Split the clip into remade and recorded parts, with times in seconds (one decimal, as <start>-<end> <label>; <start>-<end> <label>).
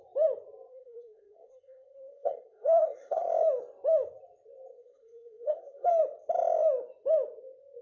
0.0-0.7 recorded; 0.7-3.3 remade; 3.3-4.7 recorded; 4.7-5.9 remade; 5.9-7.8 recorded